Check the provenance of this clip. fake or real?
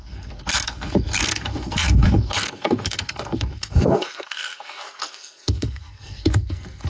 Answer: fake